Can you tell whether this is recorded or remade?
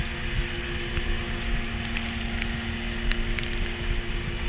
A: recorded